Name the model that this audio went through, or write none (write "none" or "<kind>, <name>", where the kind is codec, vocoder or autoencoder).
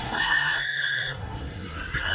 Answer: codec, SNAC